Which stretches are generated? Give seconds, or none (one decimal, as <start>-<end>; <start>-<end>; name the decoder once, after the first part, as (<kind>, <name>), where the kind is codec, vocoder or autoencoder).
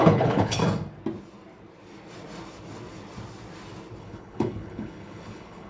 0.0-0.6 (codec, HILCodec); 4.0-5.7